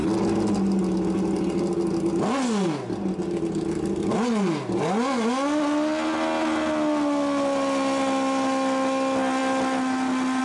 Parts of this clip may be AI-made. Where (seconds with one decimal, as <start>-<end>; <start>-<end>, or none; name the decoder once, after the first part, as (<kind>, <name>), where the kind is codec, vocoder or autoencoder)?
none